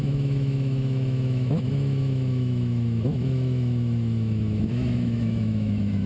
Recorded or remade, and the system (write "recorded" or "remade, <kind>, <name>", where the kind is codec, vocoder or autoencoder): remade, autoencoder, DAC-VAE